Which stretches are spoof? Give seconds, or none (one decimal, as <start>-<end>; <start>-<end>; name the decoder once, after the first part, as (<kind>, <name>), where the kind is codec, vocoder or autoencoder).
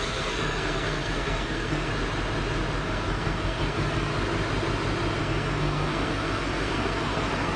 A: 0.0-1.9 (codec, SNAC); 2.8-4.1; 5.2-7.6